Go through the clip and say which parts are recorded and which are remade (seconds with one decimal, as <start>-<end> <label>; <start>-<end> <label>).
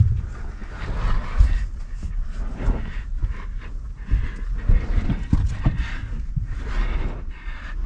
0.0-7.9 recorded